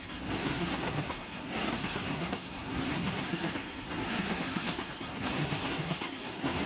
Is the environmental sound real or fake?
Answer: fake